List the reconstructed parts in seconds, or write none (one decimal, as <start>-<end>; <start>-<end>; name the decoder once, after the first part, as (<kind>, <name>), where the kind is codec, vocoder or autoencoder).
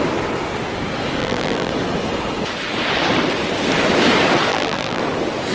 1.2-1.7 (vocoder, BigVGAN v2); 4.5-5.0